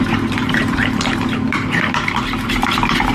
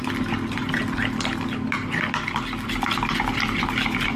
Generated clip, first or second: first